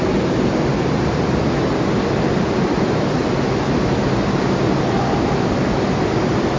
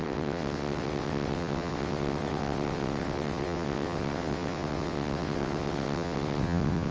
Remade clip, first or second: second